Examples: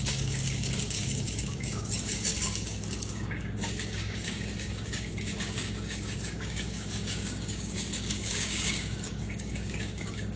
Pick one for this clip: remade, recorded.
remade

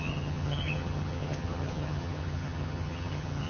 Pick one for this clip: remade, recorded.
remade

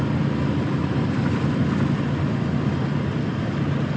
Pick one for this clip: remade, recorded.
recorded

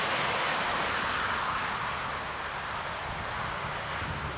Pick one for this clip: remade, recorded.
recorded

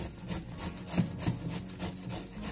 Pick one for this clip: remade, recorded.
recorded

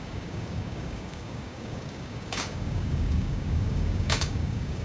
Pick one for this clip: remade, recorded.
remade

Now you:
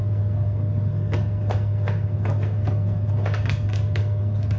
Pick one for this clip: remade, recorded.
remade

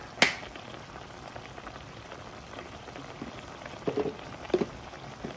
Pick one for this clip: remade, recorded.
recorded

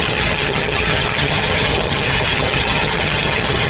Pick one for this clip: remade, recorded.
remade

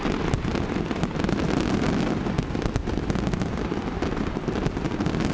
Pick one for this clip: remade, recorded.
recorded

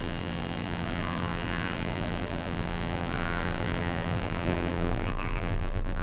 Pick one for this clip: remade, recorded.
remade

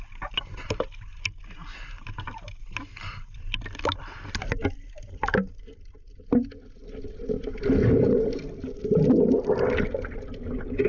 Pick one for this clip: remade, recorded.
recorded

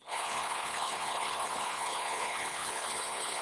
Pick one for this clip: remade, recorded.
remade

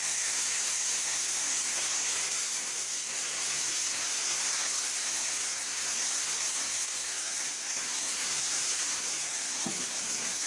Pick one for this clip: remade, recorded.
remade